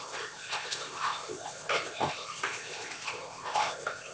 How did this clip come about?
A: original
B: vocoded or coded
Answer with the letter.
B